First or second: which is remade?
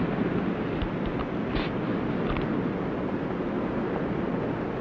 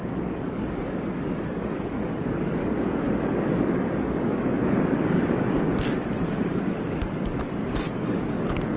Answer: second